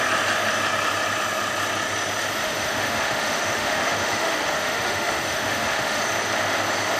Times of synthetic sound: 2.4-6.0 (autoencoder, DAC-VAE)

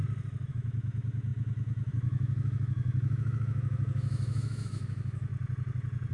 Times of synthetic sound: 0.5-5.3 (autoencoder, DAC-VAE)

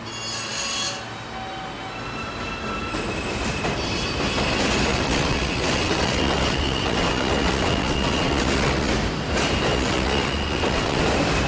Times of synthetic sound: 4.9-8.9 (vocoder, WaveNeXt); 9.7-11.0

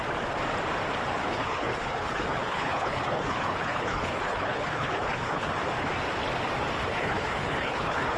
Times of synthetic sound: 1.3-5.5 (codec, HILCodec); 6.9-8.2

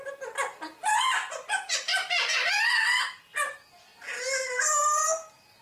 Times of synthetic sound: none